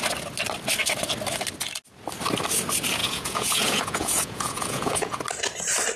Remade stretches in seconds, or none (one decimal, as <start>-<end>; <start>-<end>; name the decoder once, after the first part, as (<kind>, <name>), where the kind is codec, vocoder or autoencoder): 3.0-5.2 (vocoder, Vocos)

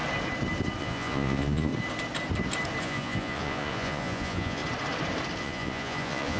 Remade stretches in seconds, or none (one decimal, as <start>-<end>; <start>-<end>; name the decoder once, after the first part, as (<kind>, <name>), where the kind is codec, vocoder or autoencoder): 0.8-1.7 (vocoder, Vocos); 2.8-4.6; 5.4-6.4

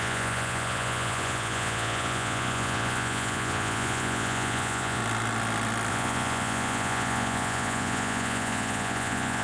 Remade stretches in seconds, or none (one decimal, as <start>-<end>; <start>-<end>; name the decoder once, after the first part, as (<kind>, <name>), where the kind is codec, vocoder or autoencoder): 0.0-5.0 (vocoder, Vocos); 5.9-9.4

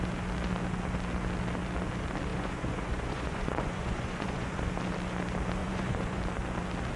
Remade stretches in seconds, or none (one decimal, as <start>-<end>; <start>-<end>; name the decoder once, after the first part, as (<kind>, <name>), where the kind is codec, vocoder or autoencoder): 2.3-4.7 (vocoder, Vocos); 5.6-6.2

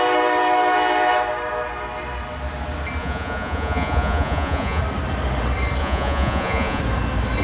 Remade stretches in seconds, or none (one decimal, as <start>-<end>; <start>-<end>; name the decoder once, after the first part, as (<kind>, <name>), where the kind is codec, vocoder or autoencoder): 3.0-4.8 (vocoder, Vocos); 5.8-6.8

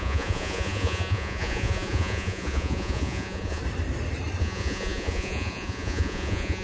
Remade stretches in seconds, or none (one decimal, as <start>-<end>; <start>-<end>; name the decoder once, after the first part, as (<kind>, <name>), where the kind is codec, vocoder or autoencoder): 0.0-3.6 (vocoder, Vocos); 4.4-6.6